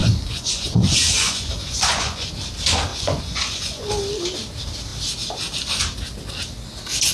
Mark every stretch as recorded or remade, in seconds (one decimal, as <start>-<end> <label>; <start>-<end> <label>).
0.0-2.3 remade; 2.3-2.9 recorded; 2.9-3.9 remade; 3.9-7.1 recorded